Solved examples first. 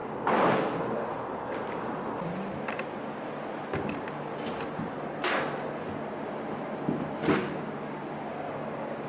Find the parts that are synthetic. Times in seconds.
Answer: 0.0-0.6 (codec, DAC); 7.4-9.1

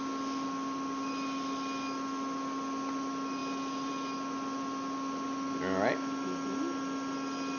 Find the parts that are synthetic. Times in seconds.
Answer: none

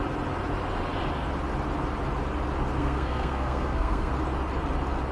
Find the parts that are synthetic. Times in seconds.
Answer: 2.8-4.1 (codec, SNAC)

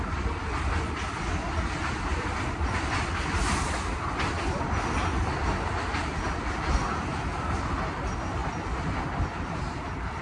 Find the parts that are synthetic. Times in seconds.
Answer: none

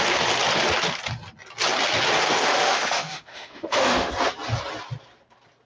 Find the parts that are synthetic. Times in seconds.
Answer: 2.6-4.1 (autoencoder, DAC-VAE)

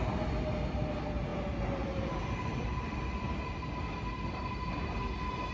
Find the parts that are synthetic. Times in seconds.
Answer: none

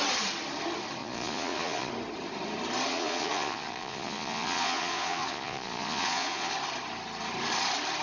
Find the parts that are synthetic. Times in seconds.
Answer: 1.0-1.9 (vocoder, Vocos); 2.9-6.5